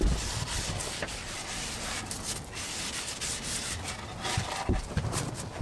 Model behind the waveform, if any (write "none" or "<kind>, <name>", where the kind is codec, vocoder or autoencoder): none